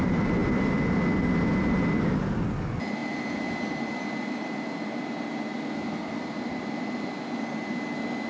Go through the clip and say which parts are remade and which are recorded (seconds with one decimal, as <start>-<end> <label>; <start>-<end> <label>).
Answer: 0.0-8.3 recorded